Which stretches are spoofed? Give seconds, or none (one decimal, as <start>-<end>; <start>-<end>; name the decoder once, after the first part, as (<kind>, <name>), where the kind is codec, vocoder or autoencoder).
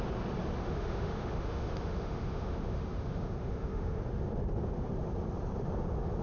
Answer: 0.6-4.0 (autoencoder, DAC-VAE)